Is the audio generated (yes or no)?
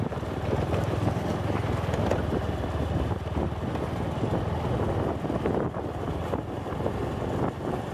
no